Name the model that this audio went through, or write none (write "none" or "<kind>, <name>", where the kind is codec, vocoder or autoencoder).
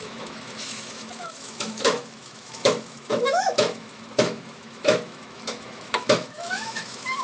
autoencoder, DAC-VAE